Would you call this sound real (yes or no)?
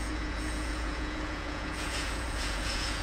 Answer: no